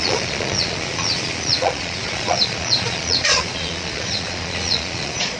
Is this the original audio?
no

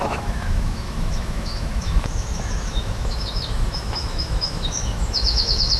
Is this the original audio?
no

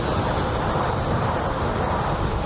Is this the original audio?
yes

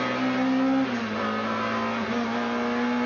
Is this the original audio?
yes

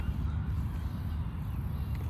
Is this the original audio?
yes